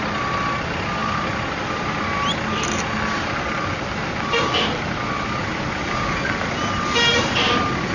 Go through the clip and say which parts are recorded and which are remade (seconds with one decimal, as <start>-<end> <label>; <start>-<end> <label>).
0.0-7.9 recorded